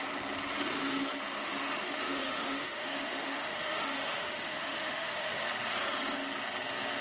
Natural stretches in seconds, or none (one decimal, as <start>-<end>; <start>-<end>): 0.0-1.4; 5.4-7.0